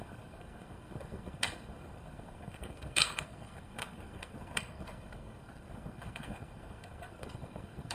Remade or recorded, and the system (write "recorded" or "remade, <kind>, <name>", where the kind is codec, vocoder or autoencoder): remade, codec, SNAC